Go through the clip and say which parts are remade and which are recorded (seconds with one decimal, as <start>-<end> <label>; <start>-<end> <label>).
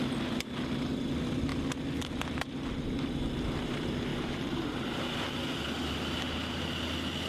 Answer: 0.0-4.1 recorded; 4.1-5.0 remade; 5.0-7.3 recorded